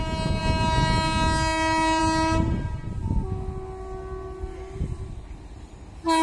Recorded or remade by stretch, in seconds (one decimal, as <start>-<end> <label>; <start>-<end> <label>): 0.0-6.2 recorded